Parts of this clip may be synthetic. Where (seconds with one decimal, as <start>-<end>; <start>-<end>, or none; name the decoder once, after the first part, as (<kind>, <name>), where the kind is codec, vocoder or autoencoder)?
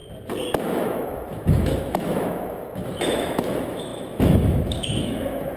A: 0.6-5.6 (autoencoder, DAC-VAE)